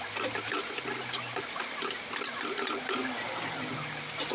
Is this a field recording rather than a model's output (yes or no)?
yes